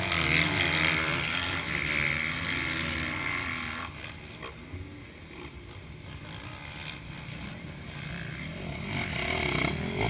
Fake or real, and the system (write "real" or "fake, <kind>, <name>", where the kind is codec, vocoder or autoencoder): real